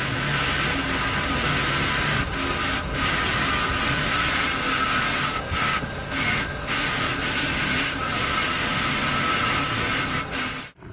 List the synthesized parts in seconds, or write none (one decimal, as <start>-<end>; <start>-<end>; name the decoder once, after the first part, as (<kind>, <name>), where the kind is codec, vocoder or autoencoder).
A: none